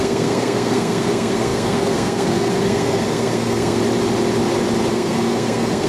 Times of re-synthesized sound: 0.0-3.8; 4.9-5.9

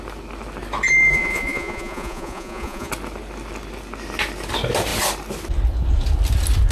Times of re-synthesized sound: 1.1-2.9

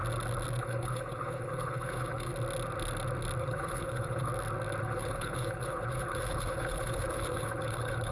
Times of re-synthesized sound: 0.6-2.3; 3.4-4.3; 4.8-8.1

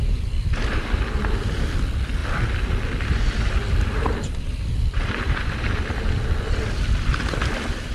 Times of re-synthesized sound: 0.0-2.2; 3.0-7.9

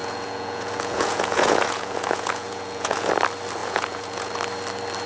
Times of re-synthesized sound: 0.0-3.1; 3.6-4.3